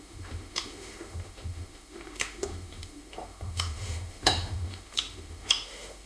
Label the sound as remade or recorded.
remade